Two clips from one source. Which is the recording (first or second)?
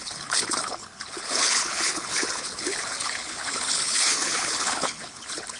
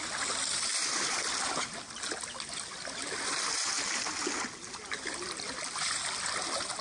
second